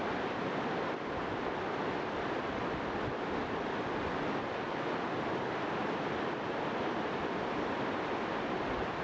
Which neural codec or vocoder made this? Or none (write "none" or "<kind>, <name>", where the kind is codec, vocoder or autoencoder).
none